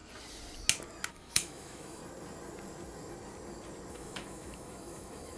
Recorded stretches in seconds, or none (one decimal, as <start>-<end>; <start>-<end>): 0.0-1.1; 2.0-3.9

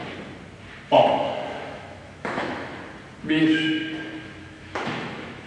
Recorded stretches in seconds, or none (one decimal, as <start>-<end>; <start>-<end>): 0.0-1.1; 2.7-3.4; 3.8-4.4

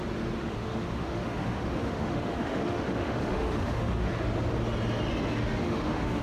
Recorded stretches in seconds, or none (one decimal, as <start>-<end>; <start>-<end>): 0.0-0.4; 4.1-5.4

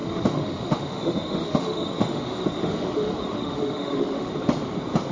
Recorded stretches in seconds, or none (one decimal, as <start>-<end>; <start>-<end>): 4.3-5.1

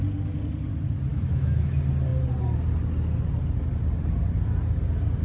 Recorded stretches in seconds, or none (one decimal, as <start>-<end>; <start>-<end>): 0.0-1.1; 1.7-5.2

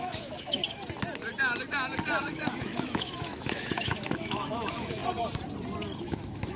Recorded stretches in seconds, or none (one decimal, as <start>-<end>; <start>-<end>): 0.6-2.2; 5.0-6.0

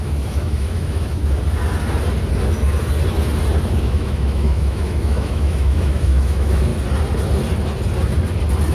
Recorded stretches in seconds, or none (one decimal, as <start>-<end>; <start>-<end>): 1.2-3.8; 6.7-8.7

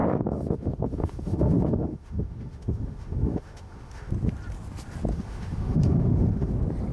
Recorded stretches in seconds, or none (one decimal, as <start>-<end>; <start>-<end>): 4.1-5.1; 6.5-6.9